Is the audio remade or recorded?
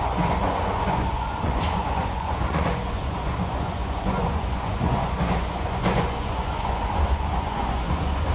remade